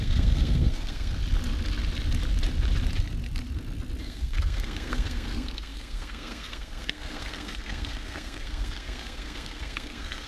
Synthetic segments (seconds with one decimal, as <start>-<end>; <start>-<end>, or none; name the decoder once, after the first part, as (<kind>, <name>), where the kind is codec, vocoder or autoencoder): 0.0-1.2 (codec, SNAC); 4.0-10.3

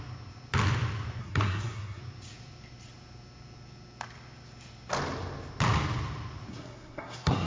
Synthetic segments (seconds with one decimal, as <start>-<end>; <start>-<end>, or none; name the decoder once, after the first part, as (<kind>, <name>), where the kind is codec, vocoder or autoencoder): 1.2-2.0 (codec, SNAC); 6.5-7.5

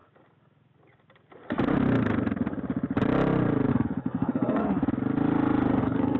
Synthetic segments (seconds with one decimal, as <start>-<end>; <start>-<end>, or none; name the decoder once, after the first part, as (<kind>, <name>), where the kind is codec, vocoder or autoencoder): 3.7-4.6 (codec, SNAC); 5.8-6.2

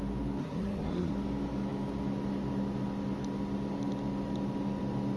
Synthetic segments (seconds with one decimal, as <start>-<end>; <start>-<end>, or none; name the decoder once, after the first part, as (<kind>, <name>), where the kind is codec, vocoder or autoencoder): 0.4-1.1 (codec, SNAC)

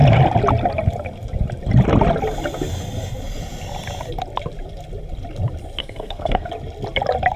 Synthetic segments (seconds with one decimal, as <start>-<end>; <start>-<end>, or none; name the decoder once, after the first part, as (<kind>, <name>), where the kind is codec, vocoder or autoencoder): 5.8-6.5 (codec, SNAC)